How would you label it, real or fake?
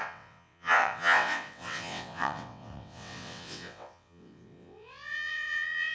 fake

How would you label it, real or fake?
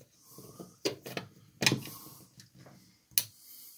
real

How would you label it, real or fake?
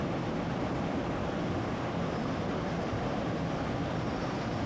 real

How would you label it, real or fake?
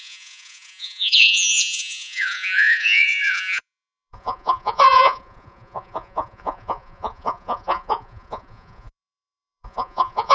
fake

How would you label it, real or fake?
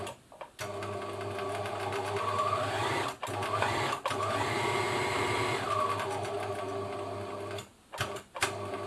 real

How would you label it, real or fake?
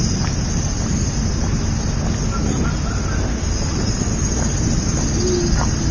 real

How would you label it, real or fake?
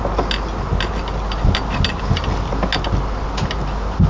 real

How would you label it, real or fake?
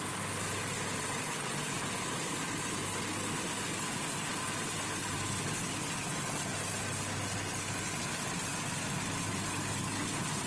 real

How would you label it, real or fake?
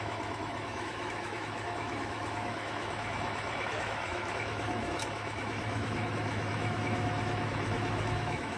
fake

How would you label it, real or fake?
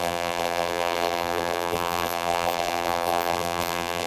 fake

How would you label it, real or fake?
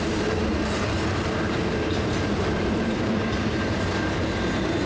fake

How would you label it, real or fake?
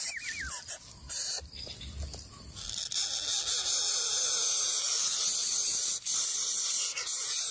real